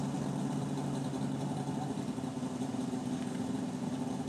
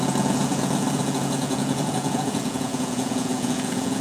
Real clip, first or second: first